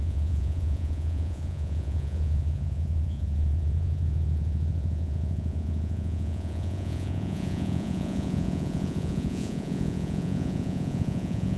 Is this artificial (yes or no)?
yes